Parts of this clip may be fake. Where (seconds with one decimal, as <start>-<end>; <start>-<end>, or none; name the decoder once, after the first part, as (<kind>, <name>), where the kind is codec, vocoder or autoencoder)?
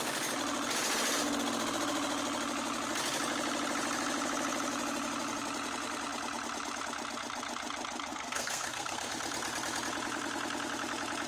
8.1-9.1 (codec, SNAC)